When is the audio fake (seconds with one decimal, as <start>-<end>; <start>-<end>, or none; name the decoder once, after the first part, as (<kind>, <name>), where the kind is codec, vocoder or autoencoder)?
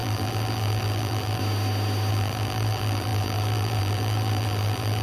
0.0-1.4 (vocoder, BigVGAN v2); 2.1-5.0